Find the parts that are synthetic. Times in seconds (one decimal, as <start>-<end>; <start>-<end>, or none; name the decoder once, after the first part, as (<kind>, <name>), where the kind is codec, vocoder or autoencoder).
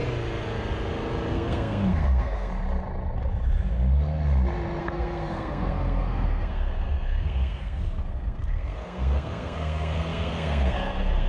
1.3-2.5 (codec, SNAC); 4.8-11.3